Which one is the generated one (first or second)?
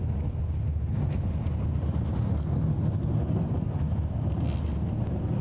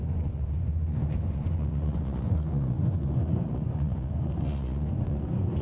second